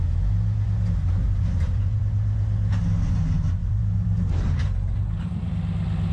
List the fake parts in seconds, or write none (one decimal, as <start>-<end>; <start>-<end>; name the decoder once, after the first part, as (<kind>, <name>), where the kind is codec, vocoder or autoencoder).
1.2-2.0 (vocoder, BigVGAN v2); 3.6-5.5